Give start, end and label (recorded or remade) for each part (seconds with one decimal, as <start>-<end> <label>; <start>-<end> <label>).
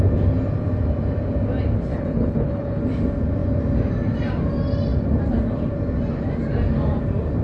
0.0-1.9 recorded; 1.9-2.8 remade; 2.8-7.4 recorded